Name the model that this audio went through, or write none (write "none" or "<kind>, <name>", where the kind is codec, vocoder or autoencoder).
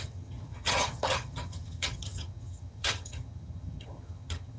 vocoder, HiFi-GAN